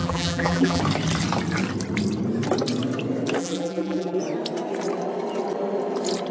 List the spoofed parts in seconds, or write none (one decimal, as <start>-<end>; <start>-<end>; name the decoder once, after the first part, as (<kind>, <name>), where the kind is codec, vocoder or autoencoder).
0.0-0.8 (vocoder, BigVGAN v2); 3.4-4.2